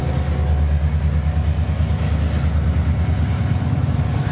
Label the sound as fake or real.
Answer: real